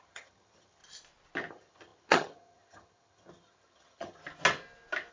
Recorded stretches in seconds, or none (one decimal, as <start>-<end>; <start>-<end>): 0.8-1.5; 4.2-5.1